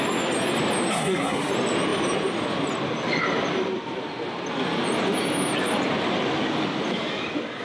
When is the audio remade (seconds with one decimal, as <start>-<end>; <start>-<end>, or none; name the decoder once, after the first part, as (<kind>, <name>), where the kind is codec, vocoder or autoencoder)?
0.9-1.5 (codec, SNAC)